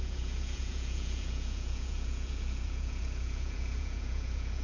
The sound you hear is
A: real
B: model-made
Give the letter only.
B